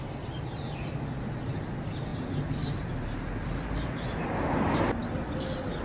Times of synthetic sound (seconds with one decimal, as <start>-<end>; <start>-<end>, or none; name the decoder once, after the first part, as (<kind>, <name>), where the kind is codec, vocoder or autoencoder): none